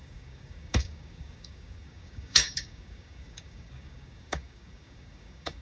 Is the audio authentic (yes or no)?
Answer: no